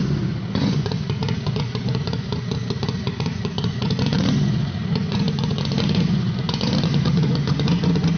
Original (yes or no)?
no